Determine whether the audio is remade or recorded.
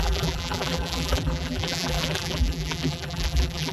remade